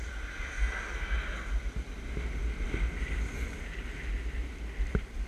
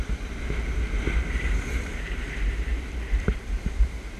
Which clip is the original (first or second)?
first